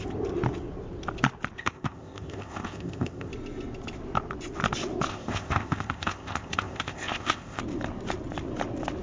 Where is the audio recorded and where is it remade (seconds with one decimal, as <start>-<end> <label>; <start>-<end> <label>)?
0.0-1.6 recorded; 1.6-3.3 remade; 3.3-5.1 recorded; 5.1-7.6 remade; 7.6-9.0 recorded